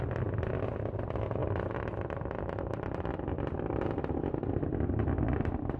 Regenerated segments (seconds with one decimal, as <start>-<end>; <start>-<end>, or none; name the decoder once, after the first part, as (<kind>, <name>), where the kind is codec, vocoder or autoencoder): none